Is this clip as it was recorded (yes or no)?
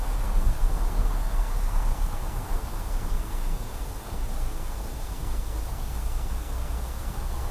no